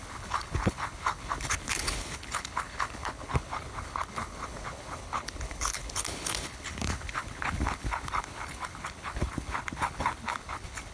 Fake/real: fake